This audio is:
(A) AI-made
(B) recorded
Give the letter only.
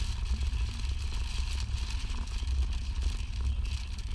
B